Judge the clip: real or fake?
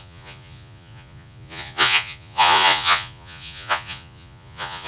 fake